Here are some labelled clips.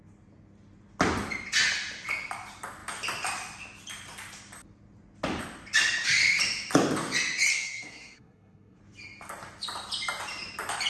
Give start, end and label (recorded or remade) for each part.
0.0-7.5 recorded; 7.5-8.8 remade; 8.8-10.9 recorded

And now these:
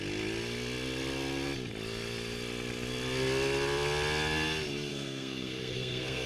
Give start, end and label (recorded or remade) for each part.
0.0-4.9 recorded; 4.9-6.3 remade